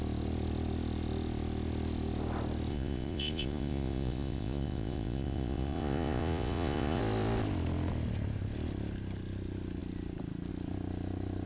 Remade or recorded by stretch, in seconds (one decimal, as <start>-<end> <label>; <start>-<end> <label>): 0.0-2.7 recorded; 2.7-7.0 remade; 7.0-11.5 recorded